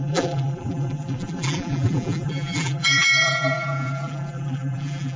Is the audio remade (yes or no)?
yes